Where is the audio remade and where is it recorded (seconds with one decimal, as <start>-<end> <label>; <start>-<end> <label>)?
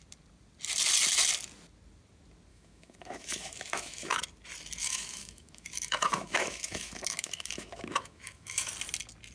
0.0-2.5 recorded; 2.5-4.2 remade; 4.2-4.8 recorded; 4.8-8.7 remade; 8.7-9.3 recorded